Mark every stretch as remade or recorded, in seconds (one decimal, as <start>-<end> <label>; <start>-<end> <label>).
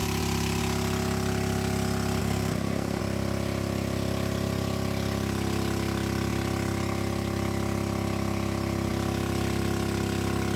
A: 0.0-2.2 recorded; 2.2-3.0 remade; 3.0-10.6 recorded